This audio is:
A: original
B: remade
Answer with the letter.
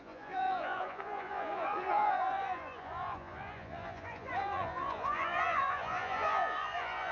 B